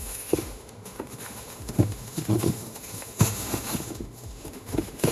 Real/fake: fake